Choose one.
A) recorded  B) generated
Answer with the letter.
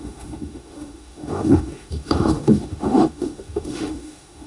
B